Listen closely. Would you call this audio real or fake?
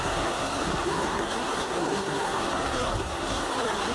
fake